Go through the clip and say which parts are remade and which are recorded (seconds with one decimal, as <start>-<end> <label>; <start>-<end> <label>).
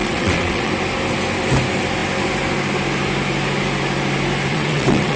0.0-0.7 remade; 0.7-4.5 recorded; 4.5-5.2 remade